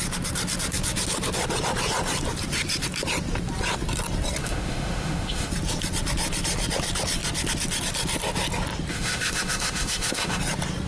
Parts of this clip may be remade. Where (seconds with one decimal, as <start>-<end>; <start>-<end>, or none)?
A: 4.4-5.5; 8.9-10.4